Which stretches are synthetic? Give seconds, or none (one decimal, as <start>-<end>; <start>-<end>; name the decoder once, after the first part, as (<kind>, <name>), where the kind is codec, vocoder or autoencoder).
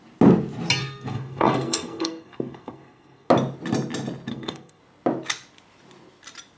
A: 0.8-3.3 (codec, SNAC); 4.3-4.8